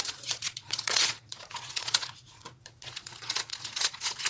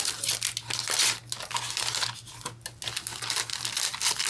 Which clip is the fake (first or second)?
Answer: first